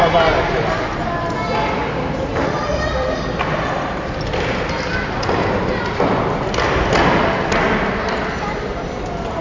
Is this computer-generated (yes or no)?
no